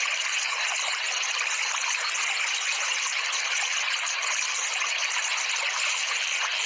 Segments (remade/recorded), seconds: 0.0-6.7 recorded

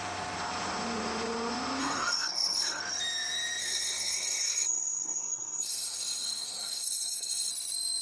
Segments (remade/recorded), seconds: 0.0-1.8 recorded; 1.8-2.8 remade; 2.8-3.6 recorded; 3.6-7.5 remade; 7.5-8.0 recorded